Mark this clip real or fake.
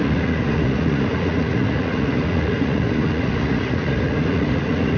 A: fake